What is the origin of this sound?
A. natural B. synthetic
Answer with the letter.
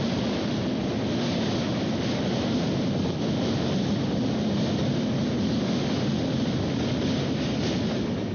A